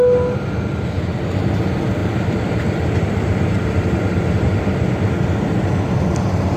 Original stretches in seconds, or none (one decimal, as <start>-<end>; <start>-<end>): 0.0-2.0; 6.0-6.6